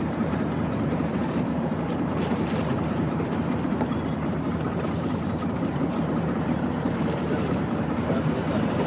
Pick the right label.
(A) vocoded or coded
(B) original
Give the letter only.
A